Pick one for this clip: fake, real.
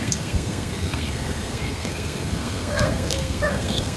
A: fake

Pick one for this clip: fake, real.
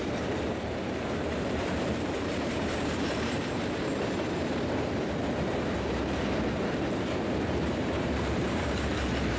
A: fake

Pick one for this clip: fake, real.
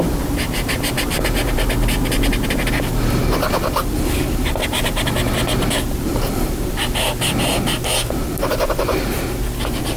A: fake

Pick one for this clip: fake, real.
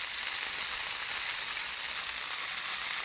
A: real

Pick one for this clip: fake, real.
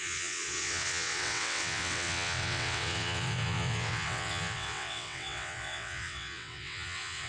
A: fake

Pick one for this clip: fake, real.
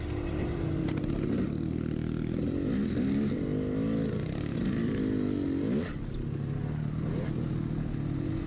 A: real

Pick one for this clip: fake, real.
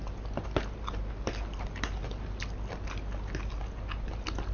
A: real